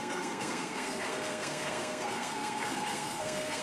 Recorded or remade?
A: remade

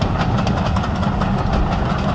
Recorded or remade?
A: recorded